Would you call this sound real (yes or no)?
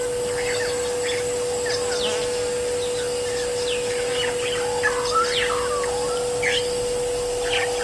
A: yes